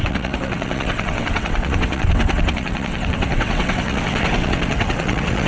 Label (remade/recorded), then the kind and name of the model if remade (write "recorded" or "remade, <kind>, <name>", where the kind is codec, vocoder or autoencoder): remade, vocoder, WaveNeXt